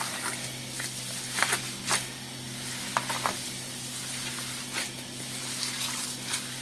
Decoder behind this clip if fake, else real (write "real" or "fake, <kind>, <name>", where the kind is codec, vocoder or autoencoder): real